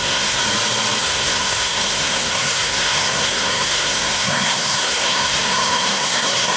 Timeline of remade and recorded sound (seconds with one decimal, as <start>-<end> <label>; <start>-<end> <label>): 0.0-0.4 remade; 0.4-1.0 recorded; 1.0-6.6 remade